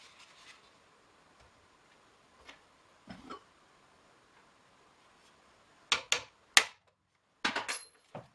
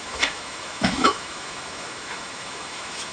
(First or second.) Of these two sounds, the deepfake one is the second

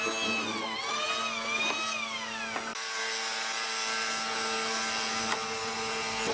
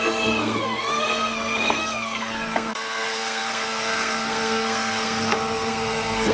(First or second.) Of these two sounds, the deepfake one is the second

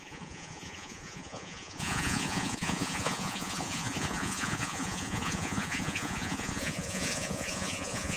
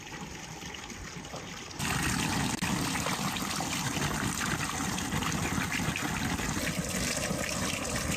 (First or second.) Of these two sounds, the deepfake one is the first